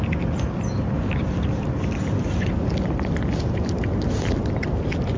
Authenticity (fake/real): real